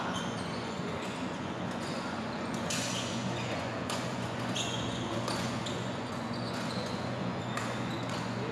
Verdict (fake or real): fake